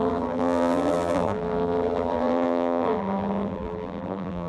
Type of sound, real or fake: fake